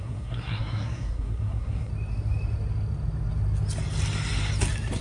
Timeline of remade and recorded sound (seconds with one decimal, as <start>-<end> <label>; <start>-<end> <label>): 0.0-1.9 remade; 1.9-5.0 recorded